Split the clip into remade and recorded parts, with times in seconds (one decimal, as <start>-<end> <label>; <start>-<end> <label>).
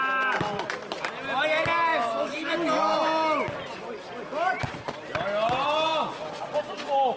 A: 0.0-1.9 recorded; 1.9-2.5 remade; 2.5-7.2 recorded